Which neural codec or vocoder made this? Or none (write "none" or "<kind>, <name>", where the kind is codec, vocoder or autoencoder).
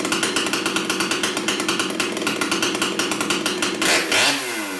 none